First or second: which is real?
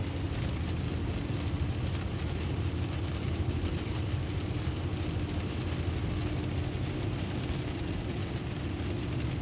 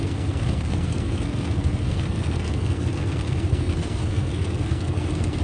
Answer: first